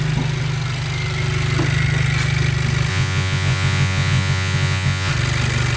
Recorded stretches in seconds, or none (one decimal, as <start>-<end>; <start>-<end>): 0.0-2.9; 5.1-5.8